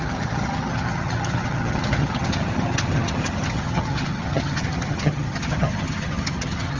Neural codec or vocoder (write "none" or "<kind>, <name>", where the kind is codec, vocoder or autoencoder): vocoder, HiFi-GAN